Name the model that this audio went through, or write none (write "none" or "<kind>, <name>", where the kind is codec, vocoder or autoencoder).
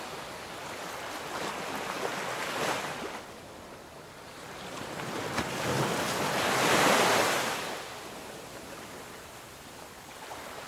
none